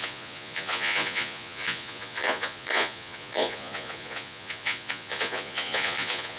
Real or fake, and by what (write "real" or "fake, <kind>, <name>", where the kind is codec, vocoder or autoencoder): fake, vocoder, Vocos